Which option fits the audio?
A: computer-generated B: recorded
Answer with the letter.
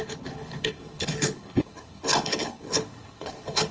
A